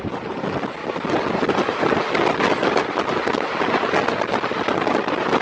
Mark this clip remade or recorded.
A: recorded